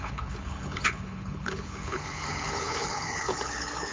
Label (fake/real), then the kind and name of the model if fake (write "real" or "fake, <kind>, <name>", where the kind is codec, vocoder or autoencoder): fake, codec, HILCodec